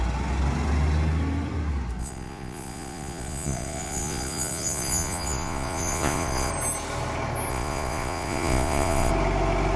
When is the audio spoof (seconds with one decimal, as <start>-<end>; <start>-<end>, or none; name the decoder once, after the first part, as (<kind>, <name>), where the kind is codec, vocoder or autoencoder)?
2.0-6.5 (vocoder, Vocos); 7.5-9.1